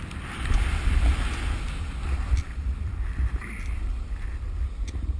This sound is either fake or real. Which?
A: real